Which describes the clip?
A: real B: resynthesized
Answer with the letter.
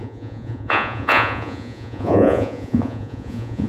B